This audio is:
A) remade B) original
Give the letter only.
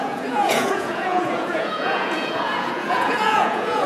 A